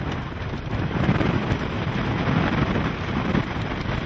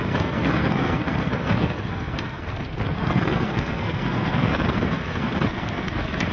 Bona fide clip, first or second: first